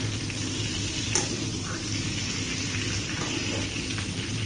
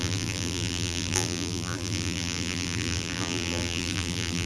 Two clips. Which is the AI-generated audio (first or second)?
second